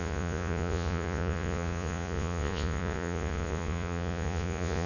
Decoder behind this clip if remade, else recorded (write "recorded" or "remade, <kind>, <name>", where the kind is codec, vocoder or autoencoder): remade, vocoder, Vocos